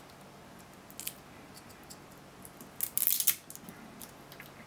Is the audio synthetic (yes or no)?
no